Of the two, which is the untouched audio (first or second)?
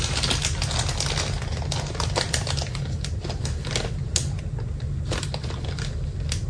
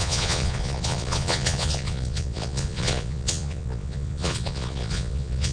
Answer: first